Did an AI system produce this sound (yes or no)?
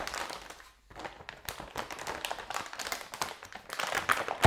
no